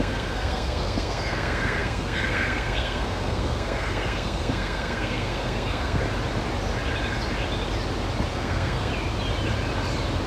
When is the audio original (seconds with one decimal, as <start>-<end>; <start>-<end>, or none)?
6.0-8.3; 8.9-10.3